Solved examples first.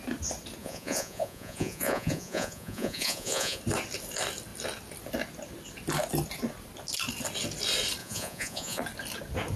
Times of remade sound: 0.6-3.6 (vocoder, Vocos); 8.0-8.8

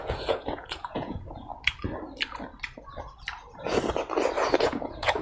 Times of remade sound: 0.0-1.5 (vocoder, Vocos); 4.6-5.2

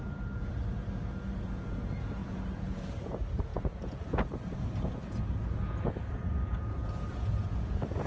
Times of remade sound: 1.4-8.1 (vocoder, Vocos)